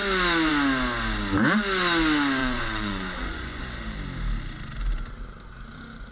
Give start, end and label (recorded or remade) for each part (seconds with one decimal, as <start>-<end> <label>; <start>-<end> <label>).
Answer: 0.0-2.4 recorded; 2.4-3.6 remade; 3.6-6.1 recorded